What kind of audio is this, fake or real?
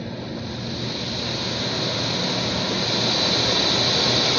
real